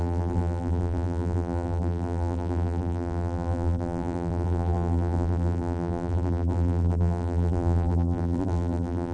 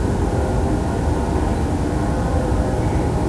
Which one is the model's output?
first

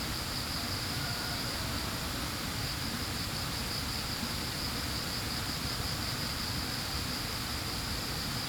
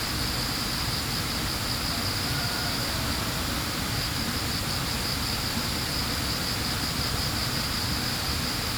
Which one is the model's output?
first